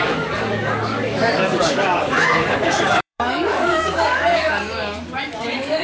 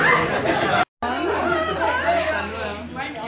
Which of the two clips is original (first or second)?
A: second